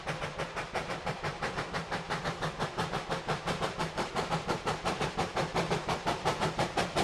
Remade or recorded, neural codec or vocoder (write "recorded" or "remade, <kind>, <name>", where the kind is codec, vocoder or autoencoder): remade, vocoder, BigVGAN v2